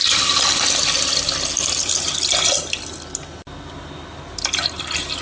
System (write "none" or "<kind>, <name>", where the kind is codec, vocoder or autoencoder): none